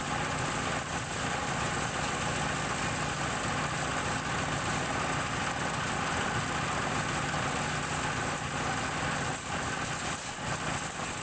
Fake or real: real